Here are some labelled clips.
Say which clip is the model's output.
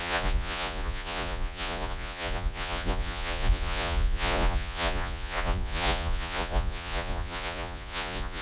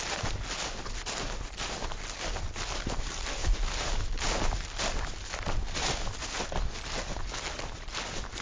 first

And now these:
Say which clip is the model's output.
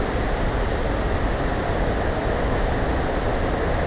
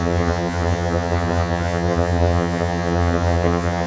second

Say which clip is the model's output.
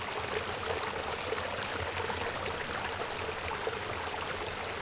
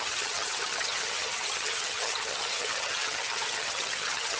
second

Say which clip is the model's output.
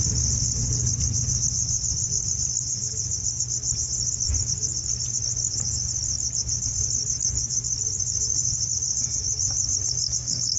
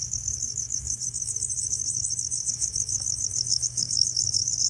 second